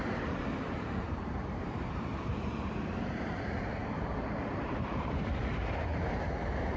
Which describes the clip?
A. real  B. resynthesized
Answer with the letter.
B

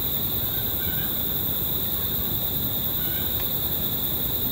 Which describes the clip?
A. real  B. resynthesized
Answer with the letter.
A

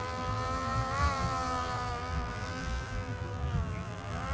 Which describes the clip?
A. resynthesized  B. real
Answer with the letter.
A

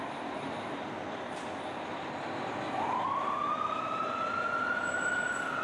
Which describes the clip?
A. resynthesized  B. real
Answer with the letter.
B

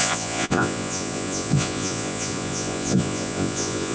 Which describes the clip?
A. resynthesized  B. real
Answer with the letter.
A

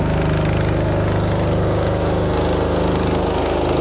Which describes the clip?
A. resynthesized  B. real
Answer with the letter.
B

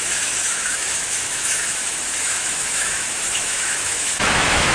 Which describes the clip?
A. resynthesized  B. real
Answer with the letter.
A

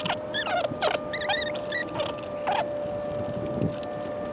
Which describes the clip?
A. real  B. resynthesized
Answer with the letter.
A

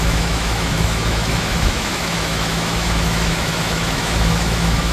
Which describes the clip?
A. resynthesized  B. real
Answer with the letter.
A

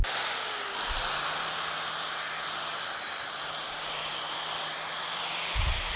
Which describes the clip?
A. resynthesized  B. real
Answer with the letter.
B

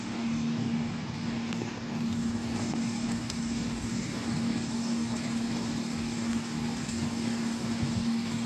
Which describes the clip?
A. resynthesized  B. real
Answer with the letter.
A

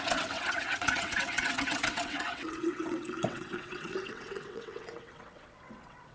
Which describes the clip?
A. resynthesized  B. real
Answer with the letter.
A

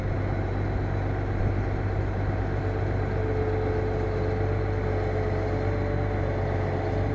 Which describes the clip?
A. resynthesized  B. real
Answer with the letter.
B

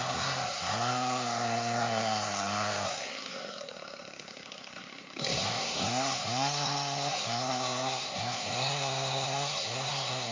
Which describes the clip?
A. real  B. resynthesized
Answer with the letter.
B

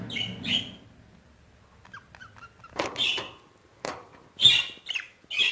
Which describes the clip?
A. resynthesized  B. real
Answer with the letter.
B